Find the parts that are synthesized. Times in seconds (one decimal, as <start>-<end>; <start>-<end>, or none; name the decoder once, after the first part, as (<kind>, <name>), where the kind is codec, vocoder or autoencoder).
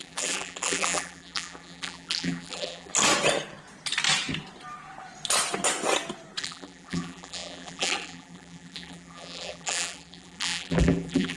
0.0-2.9 (vocoder, BigVGAN v2); 6.4-11.4